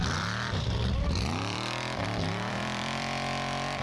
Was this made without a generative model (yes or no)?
no